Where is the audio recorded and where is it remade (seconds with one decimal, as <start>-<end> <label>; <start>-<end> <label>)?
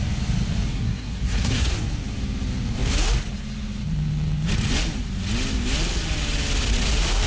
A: 0.0-0.7 recorded; 0.7-1.7 remade; 1.7-7.3 recorded